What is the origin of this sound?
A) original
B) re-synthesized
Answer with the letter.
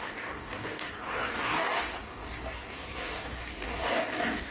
B